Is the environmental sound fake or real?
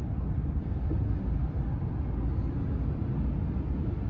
real